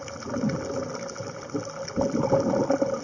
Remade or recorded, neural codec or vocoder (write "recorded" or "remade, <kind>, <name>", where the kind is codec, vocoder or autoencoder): recorded